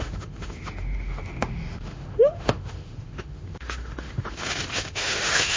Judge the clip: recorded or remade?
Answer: remade